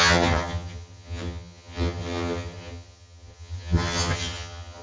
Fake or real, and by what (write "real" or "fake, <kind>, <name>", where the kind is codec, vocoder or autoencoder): fake, vocoder, HiFi-GAN